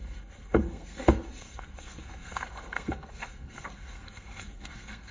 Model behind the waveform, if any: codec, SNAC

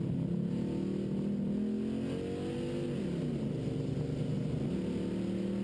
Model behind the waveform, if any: none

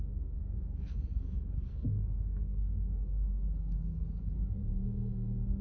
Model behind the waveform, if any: codec, SNAC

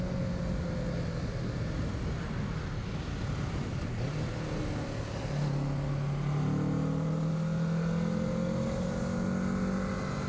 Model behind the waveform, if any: none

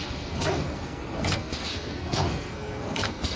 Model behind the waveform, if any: codec, SNAC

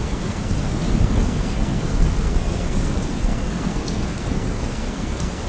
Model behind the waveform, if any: codec, SNAC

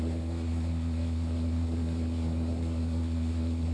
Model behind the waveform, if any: codec, SNAC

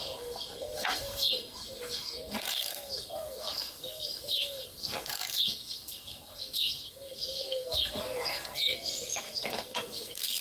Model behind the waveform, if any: codec, SNAC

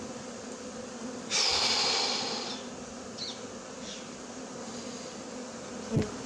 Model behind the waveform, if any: none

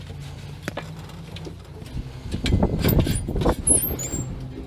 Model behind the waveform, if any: none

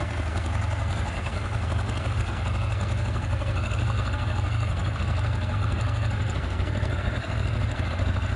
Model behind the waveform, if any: codec, SNAC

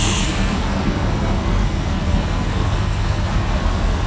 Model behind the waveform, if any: codec, SNAC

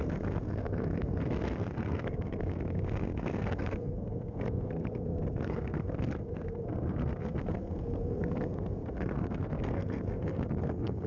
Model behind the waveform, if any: codec, SNAC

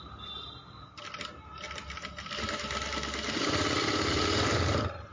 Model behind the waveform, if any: none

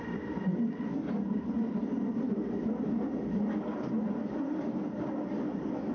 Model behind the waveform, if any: none